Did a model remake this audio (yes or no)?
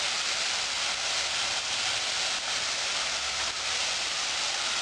no